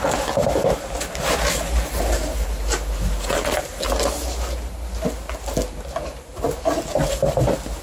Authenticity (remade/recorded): recorded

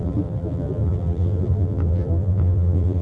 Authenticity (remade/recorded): remade